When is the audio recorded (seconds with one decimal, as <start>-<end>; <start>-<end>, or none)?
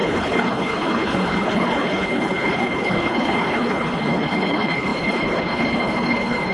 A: none